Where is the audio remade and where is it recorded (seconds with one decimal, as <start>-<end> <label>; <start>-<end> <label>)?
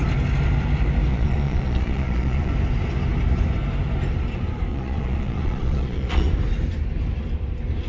0.0-1.1 recorded; 1.1-2.5 remade; 2.5-4.7 recorded; 4.7-6.3 remade; 6.3-7.9 recorded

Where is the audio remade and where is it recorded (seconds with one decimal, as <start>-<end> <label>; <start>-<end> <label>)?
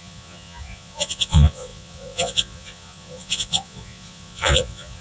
0.0-5.0 remade